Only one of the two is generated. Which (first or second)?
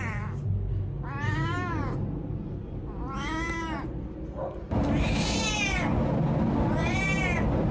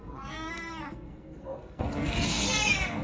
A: second